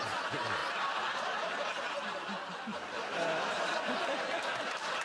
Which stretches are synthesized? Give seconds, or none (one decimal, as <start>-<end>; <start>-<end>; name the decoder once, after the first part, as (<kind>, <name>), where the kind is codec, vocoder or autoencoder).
none